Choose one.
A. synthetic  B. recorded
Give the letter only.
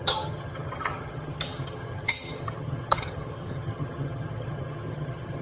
A